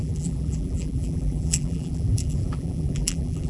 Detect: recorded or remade remade